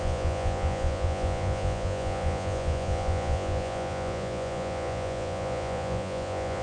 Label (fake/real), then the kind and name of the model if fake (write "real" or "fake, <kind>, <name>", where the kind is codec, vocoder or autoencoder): fake, vocoder, Vocos